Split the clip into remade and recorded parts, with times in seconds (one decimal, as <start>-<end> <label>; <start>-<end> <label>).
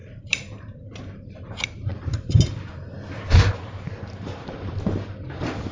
0.0-2.7 remade; 2.7-3.5 recorded; 3.5-5.7 remade